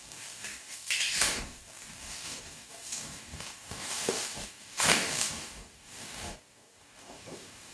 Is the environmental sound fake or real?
fake